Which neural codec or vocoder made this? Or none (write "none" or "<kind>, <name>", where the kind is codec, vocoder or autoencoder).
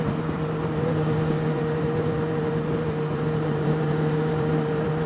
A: vocoder, BigVGAN v2